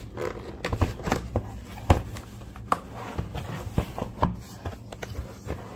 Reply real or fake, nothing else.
real